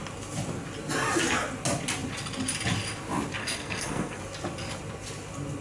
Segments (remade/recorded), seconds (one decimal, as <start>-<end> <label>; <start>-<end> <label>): 0.0-3.4 recorded; 3.4-4.2 remade; 4.2-5.6 recorded